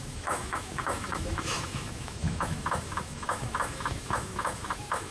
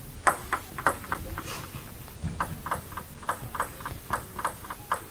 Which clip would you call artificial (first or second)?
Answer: first